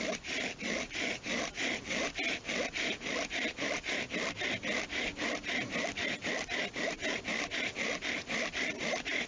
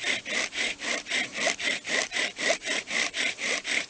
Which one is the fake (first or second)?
second